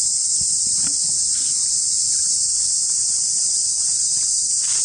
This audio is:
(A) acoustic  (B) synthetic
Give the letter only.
A